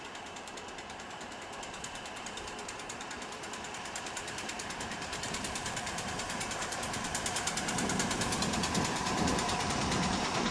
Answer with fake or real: fake